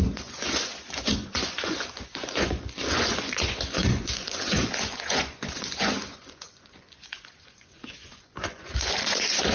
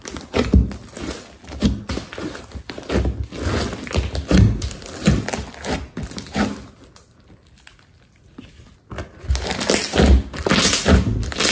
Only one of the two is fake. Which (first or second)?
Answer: first